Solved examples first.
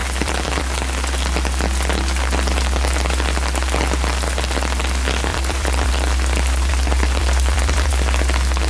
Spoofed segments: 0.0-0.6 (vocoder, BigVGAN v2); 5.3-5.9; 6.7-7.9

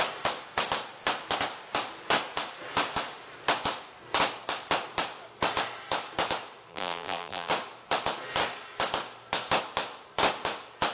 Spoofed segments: 6.7-7.5 (vocoder, BigVGAN v2)

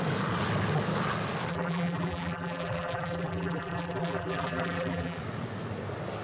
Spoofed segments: 1.5-5.2 (vocoder, BigVGAN v2)

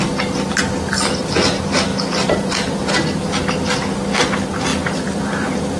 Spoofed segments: 1.9-2.5 (vocoder, BigVGAN v2); 4.7-5.8

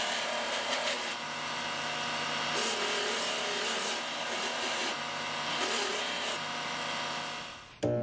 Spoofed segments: none

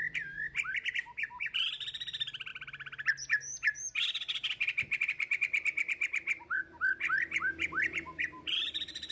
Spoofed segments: 0.0-2.5 (vocoder, BigVGAN v2); 6.8-9.1

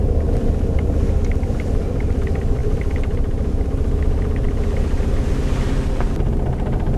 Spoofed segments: none

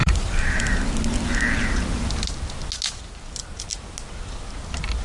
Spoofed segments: 0.0-0.6 (vocoder, BigVGAN v2)